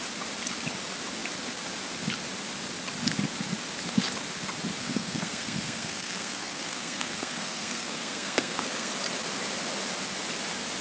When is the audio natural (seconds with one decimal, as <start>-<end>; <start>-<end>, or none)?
0.0-4.8; 8.9-10.8

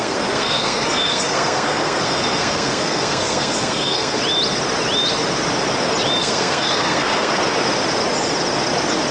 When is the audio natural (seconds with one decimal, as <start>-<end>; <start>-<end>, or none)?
4.2-6.2; 7.3-9.1